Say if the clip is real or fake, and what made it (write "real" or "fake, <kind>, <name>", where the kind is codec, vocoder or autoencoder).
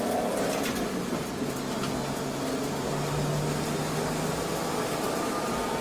real